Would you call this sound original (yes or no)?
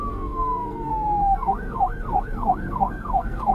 no